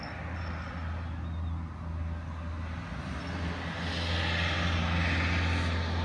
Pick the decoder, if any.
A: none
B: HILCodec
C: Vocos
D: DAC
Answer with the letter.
A